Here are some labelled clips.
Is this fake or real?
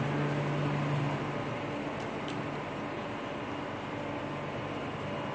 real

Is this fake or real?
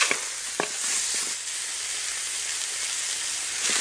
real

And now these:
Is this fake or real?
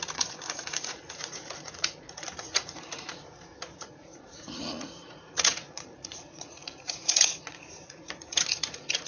fake